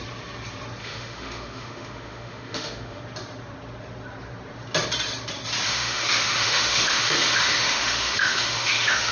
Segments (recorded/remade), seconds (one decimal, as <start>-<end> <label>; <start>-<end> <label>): 0.0-0.8 recorded; 0.8-3.0 remade; 3.0-5.7 recorded; 5.7-9.1 remade